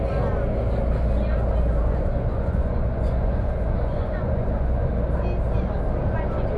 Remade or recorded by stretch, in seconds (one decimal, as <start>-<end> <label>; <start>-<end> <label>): 0.0-1.8 recorded; 1.8-4.9 remade; 4.9-6.6 recorded